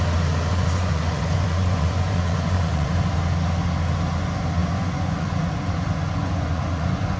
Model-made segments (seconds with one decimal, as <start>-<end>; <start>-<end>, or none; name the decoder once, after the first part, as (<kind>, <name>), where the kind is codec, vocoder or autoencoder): 0.5-2.9 (vocoder, Vocos); 4.6-7.2